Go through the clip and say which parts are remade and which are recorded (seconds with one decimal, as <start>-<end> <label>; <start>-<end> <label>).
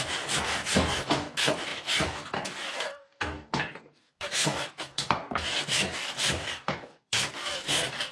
0.0-8.1 remade